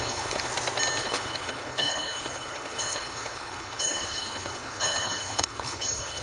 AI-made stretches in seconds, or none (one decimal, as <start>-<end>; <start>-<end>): 0.0-0.5; 1.0-6.2